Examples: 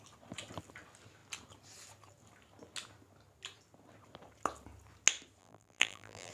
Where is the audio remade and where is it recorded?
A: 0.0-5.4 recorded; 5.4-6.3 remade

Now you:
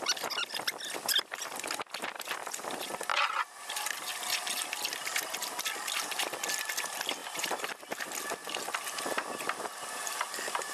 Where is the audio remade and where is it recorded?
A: 0.0-7.2 recorded; 7.2-8.2 remade; 8.2-10.7 recorded

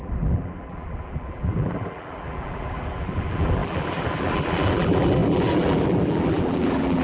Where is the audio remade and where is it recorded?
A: 0.0-7.0 remade

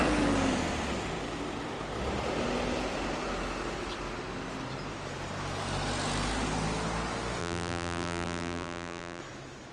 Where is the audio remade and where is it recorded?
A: 0.0-7.4 recorded; 7.4-9.2 remade; 9.2-9.7 recorded

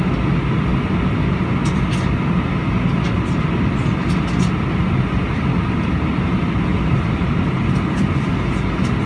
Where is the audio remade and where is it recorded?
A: 0.0-6.7 recorded; 6.7-8.3 remade; 8.3-9.1 recorded

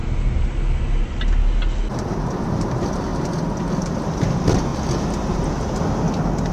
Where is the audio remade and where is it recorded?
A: 0.0-1.9 recorded; 1.9-3.1 remade; 3.1-3.8 recorded; 3.8-4.7 remade; 4.7-6.5 recorded